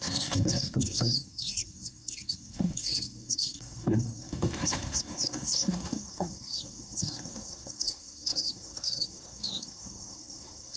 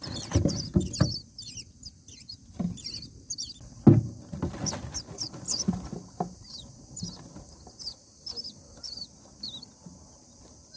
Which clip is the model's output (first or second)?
first